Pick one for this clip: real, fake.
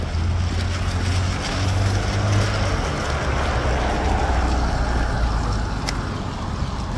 real